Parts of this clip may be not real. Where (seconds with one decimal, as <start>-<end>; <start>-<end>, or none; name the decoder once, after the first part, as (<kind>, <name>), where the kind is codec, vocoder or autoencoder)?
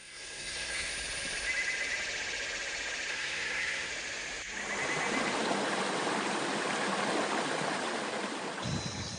0.0-0.9 (codec, SNAC); 3.1-3.9